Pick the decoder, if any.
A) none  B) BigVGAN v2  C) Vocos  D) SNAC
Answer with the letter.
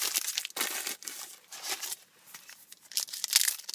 A